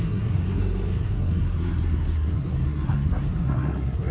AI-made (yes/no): yes